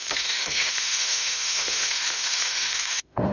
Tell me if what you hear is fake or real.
fake